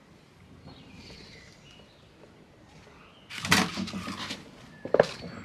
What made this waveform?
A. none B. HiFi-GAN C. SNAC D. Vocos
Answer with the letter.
A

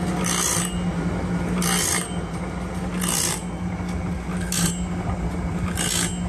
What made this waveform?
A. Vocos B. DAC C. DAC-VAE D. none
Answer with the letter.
D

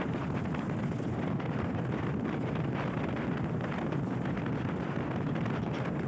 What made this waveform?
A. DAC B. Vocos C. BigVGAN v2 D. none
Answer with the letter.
D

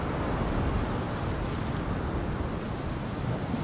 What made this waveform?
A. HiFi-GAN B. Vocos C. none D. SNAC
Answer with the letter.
C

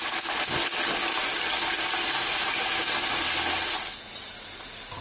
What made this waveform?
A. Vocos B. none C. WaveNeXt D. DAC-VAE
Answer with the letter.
B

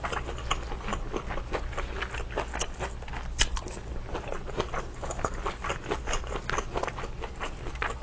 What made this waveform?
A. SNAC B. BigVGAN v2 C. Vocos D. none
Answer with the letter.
D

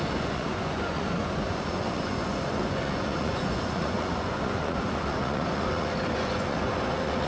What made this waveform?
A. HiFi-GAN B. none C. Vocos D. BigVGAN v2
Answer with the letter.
C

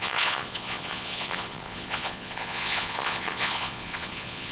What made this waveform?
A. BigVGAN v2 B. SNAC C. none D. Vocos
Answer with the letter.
D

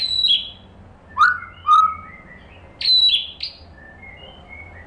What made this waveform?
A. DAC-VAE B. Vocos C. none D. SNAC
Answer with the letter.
C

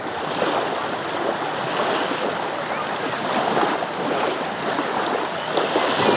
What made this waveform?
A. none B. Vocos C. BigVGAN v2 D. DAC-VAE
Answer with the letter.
A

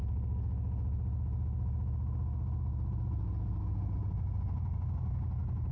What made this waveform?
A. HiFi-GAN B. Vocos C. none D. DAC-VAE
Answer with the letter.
C